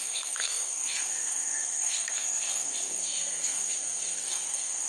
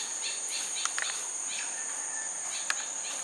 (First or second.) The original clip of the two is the second